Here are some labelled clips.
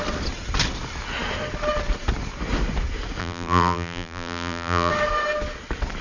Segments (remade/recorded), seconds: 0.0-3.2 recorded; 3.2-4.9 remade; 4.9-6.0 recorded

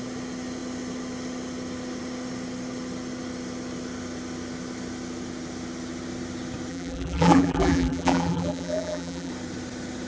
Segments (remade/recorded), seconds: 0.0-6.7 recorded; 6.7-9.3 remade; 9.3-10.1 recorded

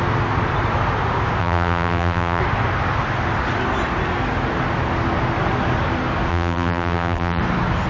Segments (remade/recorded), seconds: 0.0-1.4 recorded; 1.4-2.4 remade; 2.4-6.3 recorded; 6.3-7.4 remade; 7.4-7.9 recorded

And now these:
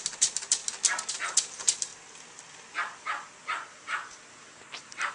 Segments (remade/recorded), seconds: 0.0-0.6 remade; 0.6-1.1 recorded; 1.1-1.9 remade; 1.9-5.1 recorded

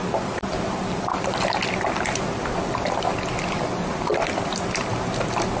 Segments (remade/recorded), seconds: 0.0-4.1 recorded; 4.1-4.9 remade; 4.9-5.6 recorded

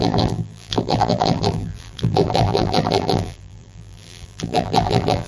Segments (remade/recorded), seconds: 0.0-5.3 remade

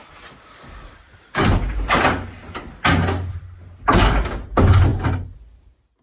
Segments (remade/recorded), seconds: 0.0-6.0 recorded

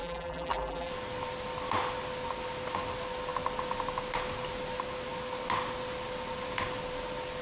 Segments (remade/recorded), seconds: 0.0-0.9 remade; 0.9-7.4 recorded